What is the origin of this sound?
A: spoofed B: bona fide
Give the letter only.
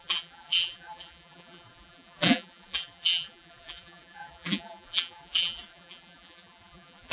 A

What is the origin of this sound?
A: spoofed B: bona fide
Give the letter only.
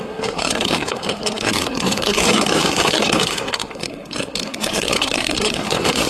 A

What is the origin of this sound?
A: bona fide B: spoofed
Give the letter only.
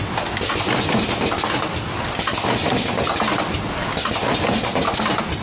A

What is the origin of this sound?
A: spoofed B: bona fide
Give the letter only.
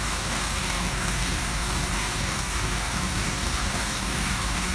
A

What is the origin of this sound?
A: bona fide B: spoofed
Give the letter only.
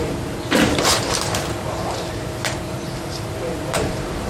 B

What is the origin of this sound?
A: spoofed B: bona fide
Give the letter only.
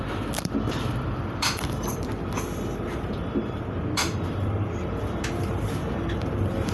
A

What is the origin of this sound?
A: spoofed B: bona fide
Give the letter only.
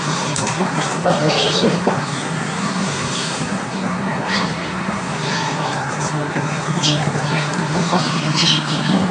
A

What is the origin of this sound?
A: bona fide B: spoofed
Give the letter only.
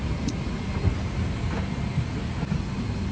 A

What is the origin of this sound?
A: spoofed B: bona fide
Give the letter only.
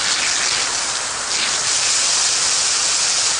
B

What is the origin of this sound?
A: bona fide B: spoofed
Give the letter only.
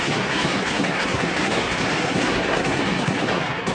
B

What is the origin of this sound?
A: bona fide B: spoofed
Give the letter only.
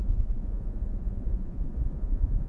B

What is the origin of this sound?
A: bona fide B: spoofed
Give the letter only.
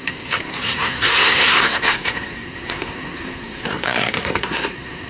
B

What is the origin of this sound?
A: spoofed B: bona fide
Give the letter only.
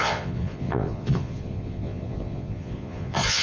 A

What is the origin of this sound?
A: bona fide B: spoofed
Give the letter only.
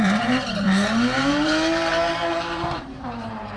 B